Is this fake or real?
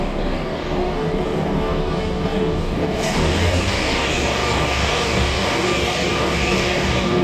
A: fake